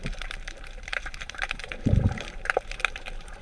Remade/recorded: remade